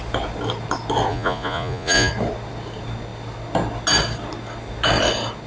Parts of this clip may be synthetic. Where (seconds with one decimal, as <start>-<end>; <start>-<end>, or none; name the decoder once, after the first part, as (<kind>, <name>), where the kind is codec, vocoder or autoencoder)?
1.1-2.1 (vocoder, Vocos)